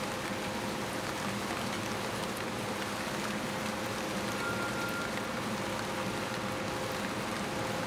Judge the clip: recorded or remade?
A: recorded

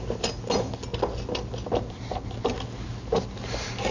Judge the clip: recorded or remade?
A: recorded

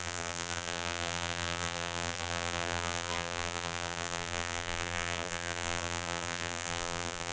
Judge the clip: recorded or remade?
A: remade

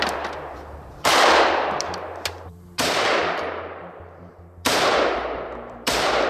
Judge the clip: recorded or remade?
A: remade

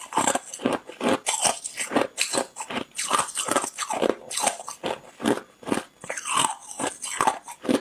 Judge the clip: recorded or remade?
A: recorded